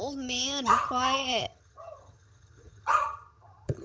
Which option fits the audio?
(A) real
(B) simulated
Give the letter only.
B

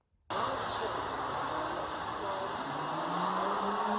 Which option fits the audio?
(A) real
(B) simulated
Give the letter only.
A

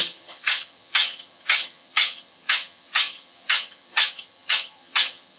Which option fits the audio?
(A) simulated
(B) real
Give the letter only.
A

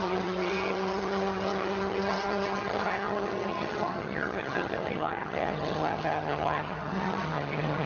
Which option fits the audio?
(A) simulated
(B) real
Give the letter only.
A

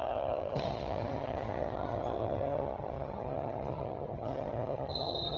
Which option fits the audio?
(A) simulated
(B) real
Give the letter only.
A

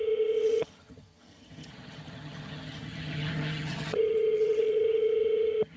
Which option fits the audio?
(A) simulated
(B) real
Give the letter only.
A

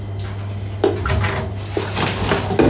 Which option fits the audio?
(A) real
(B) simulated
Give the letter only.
A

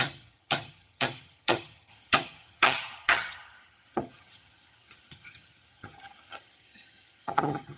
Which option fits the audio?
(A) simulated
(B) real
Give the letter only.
A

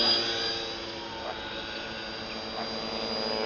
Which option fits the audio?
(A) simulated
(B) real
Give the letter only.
B